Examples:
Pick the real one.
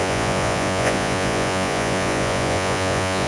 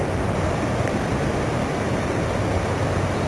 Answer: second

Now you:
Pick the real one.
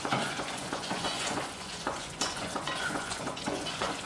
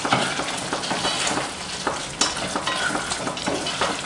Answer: second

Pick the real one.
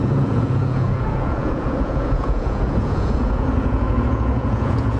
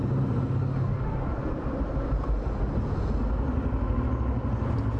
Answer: second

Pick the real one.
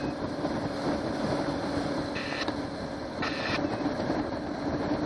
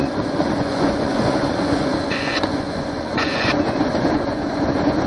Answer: first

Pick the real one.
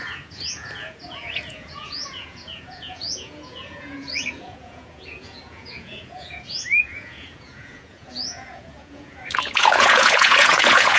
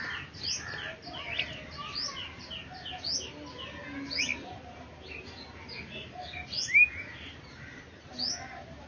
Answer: second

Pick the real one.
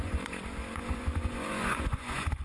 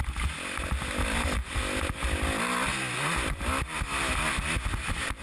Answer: second